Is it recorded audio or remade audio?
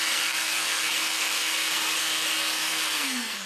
remade